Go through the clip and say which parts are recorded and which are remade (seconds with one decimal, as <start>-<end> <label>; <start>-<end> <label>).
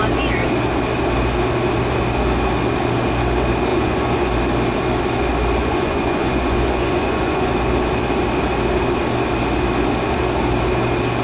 0.0-3.7 recorded; 3.7-4.3 remade; 4.3-5.6 recorded; 5.6-7.5 remade; 7.5-11.2 recorded